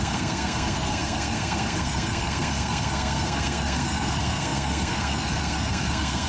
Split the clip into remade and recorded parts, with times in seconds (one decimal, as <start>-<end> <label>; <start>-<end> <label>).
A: 0.0-6.3 remade